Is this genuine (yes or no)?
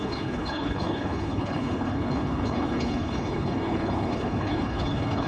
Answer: no